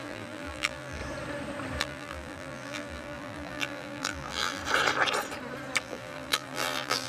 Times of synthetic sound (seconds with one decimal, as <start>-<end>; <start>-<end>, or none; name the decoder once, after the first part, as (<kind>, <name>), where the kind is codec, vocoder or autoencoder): 0.0-1.0 (vocoder, BigVGAN v2); 1.8-4.6; 5.8-7.1